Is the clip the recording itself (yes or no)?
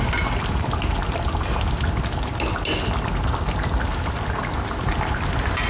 yes